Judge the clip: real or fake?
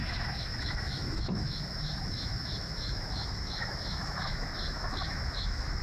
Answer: fake